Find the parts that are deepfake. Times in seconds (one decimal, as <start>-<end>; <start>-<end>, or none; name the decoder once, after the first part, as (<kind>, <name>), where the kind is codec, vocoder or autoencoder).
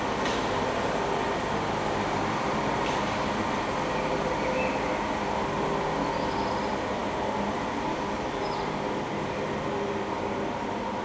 none